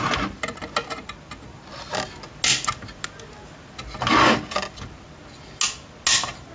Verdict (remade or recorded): recorded